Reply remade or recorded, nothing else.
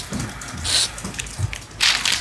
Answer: recorded